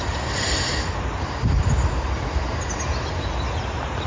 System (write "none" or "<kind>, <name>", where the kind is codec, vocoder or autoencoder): none